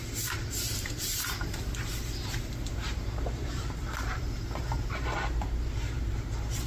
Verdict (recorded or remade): remade